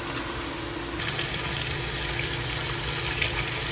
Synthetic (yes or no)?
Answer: no